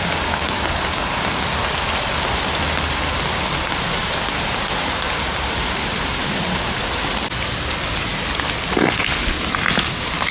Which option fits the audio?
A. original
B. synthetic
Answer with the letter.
A